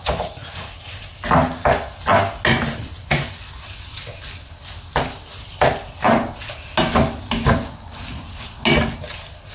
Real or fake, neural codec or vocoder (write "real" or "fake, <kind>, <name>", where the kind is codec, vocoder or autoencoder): real